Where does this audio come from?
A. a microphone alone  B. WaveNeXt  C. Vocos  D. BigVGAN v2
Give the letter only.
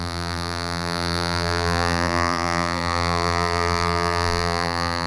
D